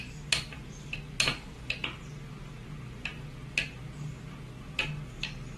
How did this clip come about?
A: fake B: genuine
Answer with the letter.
B